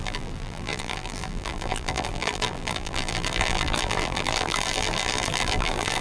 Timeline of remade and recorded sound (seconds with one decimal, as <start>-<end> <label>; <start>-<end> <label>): 0.0-6.0 remade